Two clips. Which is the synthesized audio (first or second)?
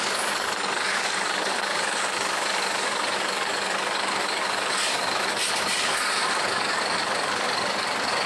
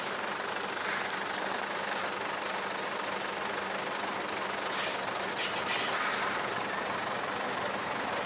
first